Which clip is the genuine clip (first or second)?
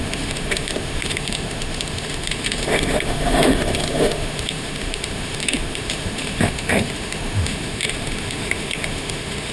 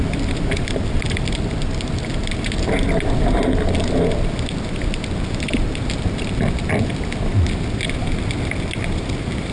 second